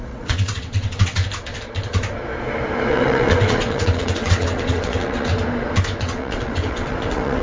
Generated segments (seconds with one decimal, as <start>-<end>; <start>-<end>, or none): 0.0-1.2; 2.9-5.3; 6.0-7.4